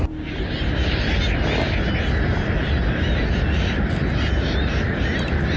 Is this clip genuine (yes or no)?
yes